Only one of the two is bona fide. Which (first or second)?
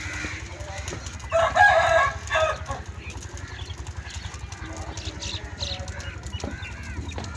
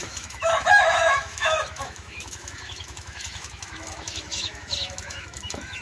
first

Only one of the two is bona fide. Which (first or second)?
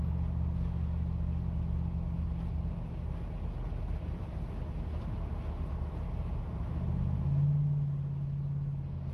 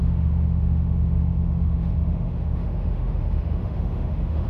first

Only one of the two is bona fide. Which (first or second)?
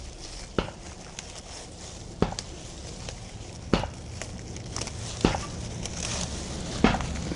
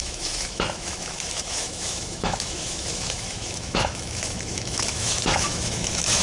first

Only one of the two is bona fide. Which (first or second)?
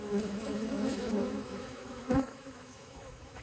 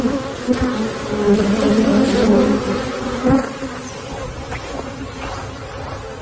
second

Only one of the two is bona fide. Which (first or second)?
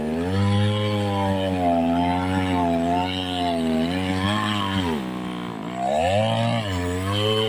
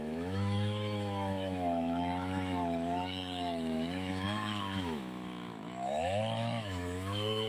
first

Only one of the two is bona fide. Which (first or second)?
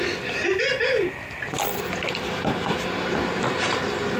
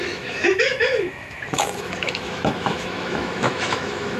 first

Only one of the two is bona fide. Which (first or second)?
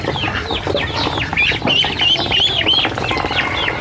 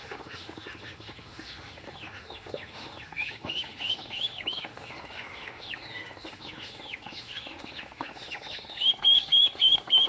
first